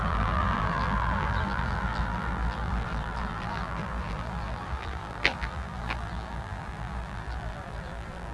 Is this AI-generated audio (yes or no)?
yes